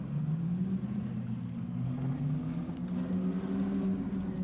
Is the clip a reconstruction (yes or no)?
no